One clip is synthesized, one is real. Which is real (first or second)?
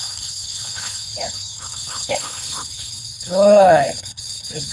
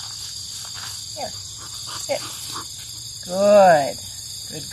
second